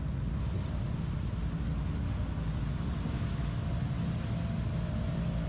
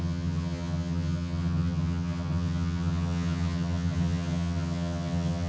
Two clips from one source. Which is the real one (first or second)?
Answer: first